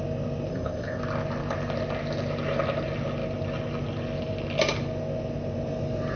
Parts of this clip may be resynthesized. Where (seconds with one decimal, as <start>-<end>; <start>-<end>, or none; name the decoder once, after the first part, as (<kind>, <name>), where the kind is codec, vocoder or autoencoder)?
0.5-1.0 (codec, ZipCodec)